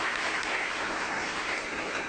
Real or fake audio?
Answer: fake